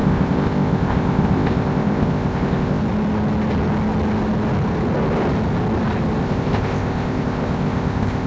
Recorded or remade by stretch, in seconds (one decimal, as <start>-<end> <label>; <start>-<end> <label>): 0.0-2.8 remade; 2.8-6.2 recorded; 6.2-8.3 remade